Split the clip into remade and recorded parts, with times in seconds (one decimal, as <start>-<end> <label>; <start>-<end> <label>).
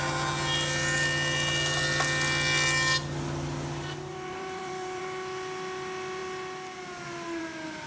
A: 0.0-4.1 recorded; 4.1-5.0 remade; 5.0-7.9 recorded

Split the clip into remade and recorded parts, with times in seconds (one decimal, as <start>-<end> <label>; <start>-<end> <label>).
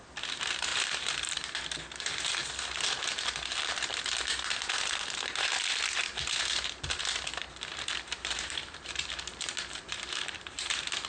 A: 0.0-0.7 recorded; 0.7-1.3 remade; 1.3-7.7 recorded; 7.7-11.1 remade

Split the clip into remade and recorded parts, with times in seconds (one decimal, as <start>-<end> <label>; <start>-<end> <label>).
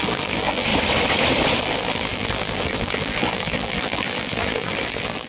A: 0.0-0.7 remade; 0.7-1.6 recorded; 1.6-5.3 remade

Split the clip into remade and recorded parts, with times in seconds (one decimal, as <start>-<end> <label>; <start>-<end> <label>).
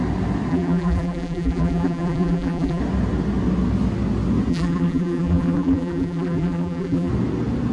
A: 0.0-0.5 recorded; 0.5-2.8 remade; 2.8-4.5 recorded; 4.5-7.1 remade; 7.1-7.7 recorded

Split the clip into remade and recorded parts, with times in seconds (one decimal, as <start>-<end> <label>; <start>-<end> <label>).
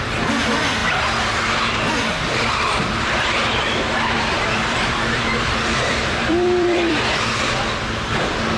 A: 0.0-2.1 recorded; 2.1-7.1 remade; 7.1-8.6 recorded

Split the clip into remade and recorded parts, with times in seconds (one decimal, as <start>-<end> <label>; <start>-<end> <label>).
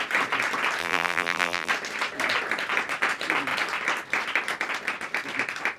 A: 0.0-0.8 recorded; 0.8-1.7 remade; 1.7-5.8 recorded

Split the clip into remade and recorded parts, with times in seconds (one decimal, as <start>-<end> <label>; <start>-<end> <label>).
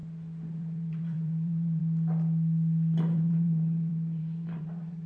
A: 0.0-0.6 recorded; 0.6-1.8 remade; 1.8-3.0 recorded; 3.0-5.1 remade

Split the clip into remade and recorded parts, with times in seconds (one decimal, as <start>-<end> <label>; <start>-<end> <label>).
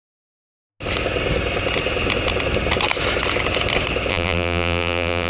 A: 0.0-4.1 recorded; 4.1-5.3 remade